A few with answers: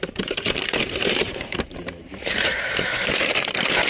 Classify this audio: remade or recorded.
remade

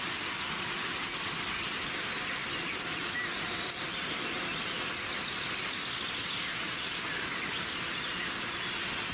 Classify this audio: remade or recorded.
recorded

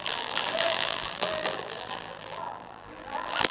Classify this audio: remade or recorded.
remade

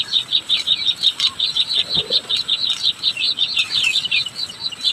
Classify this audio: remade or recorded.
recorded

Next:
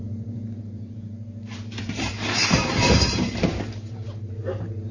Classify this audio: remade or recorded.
remade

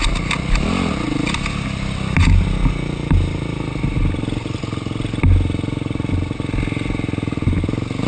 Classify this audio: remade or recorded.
recorded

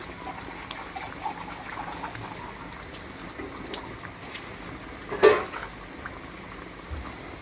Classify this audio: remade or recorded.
recorded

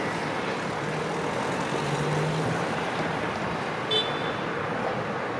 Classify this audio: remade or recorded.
recorded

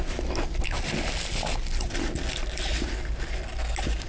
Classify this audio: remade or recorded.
recorded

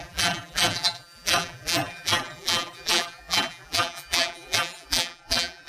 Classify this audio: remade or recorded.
remade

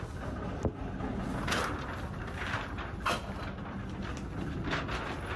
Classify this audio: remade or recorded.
recorded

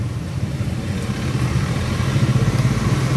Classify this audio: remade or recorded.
remade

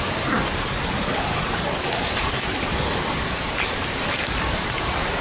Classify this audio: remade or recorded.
remade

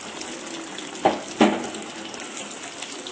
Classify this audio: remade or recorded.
recorded